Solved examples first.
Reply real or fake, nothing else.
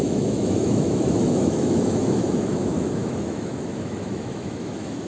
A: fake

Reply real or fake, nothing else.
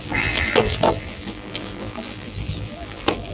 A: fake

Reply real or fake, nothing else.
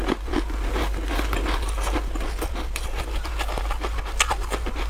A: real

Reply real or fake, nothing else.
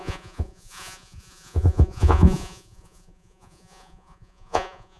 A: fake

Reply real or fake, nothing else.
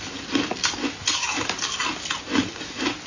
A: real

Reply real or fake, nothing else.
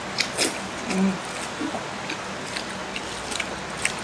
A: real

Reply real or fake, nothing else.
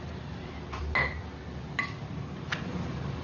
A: real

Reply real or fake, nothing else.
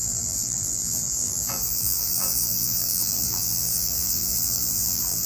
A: fake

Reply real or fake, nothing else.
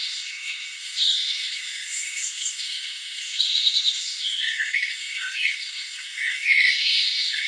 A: fake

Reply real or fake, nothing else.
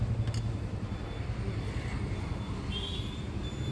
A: real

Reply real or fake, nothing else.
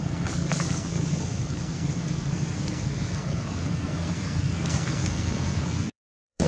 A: fake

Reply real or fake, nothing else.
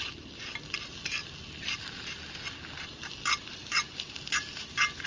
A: real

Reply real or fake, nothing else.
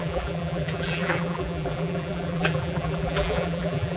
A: fake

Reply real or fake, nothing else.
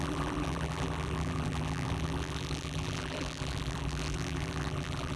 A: fake